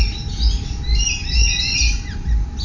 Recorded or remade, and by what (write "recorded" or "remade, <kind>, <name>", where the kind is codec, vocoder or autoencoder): recorded